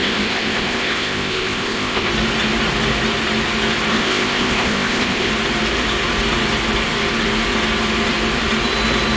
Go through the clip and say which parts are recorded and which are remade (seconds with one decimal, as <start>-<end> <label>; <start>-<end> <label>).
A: 0.0-2.1 remade; 2.1-3.9 recorded; 3.9-5.3 remade; 5.3-9.2 recorded